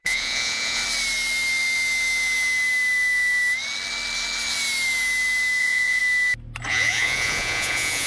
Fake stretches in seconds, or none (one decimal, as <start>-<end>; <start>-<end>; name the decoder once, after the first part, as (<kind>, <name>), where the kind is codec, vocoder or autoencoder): 0.0-0.8 (vocoder, Vocos); 5.6-6.0; 6.7-8.1